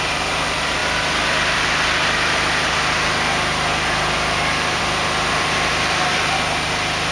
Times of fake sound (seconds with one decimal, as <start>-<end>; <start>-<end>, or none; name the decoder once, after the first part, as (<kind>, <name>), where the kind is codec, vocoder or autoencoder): none